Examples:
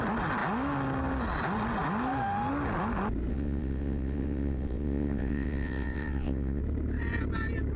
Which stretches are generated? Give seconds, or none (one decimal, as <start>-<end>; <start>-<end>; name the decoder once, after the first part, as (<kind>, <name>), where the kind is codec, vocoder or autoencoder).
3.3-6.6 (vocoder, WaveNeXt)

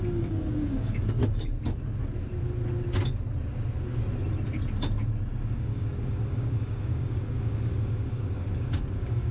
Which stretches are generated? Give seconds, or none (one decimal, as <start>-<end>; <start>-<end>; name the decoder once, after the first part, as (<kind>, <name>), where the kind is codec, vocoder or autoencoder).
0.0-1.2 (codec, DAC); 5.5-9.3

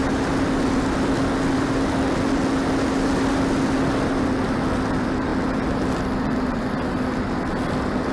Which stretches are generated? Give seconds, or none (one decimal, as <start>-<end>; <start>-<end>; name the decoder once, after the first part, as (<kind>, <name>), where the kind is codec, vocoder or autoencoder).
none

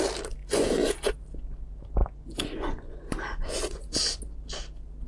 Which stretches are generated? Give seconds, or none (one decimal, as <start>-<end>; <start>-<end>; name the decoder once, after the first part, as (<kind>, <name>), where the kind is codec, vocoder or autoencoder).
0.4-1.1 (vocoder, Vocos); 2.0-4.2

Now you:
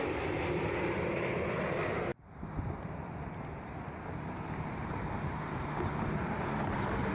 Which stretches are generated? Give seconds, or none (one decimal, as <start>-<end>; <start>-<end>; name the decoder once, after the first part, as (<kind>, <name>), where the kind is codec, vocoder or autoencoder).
none